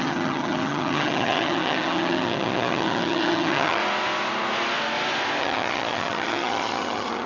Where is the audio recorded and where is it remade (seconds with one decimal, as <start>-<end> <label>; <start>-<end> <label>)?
0.0-3.8 remade; 3.8-5.4 recorded; 5.4-7.3 remade